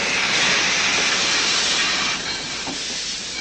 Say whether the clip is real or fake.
fake